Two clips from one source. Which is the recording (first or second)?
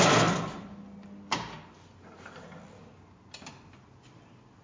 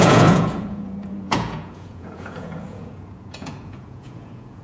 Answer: first